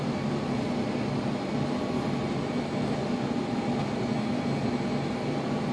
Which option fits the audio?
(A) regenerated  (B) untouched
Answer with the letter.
B